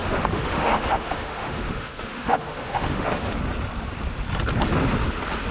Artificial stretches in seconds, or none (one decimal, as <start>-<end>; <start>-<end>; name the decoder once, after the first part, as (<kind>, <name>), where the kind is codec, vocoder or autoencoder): 0.0-3.3 (autoencoder, DAC-VAE)